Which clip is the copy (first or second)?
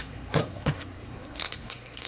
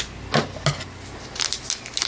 first